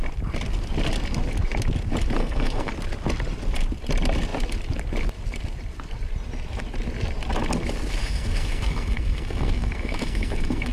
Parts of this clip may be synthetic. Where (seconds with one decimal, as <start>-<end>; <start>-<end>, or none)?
2.2-2.7; 8.0-10.7